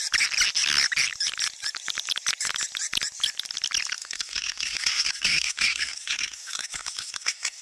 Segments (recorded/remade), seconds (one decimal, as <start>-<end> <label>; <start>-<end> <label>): 0.0-4.0 recorded; 4.0-7.6 remade